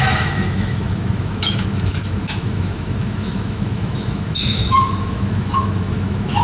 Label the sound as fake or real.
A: fake